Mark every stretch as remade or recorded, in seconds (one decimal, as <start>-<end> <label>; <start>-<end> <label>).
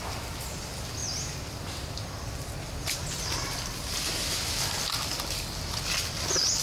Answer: 0.0-6.6 recorded